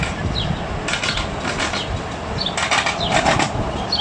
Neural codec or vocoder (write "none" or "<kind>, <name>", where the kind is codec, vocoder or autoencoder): none